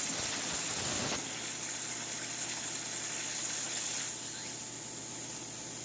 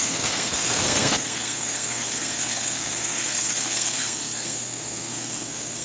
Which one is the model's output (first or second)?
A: second